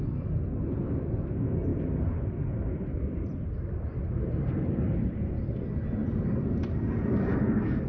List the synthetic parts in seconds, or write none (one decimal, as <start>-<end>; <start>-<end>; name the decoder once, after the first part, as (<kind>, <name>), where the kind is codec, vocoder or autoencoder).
1.7-5.2 (vocoder, BigVGAN v2); 6.0-6.7